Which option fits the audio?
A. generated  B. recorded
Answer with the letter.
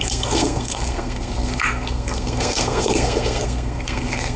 A